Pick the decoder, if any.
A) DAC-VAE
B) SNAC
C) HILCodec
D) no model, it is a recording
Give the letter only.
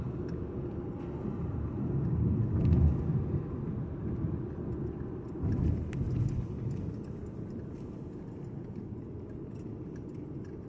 D